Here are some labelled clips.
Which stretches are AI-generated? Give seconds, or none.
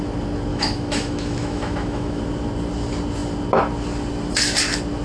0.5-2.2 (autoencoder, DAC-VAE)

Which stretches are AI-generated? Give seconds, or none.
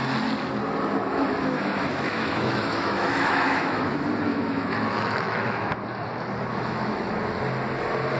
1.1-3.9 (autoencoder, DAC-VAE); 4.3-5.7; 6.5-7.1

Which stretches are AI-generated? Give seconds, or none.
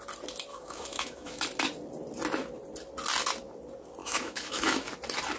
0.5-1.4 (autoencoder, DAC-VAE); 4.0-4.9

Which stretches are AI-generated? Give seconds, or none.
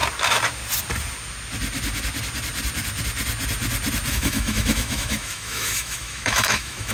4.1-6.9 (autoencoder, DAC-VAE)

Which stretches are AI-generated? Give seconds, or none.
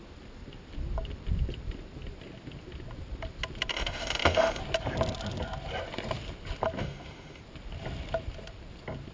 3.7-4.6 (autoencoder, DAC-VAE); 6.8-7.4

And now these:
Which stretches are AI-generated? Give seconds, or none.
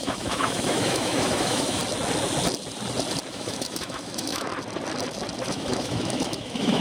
0.0-1.8 (autoencoder, DAC-VAE); 3.3-4.5; 5.5-6.8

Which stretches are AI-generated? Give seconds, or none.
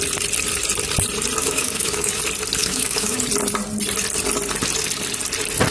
1.4-2.2 (autoencoder, DAC-VAE); 2.6-3.2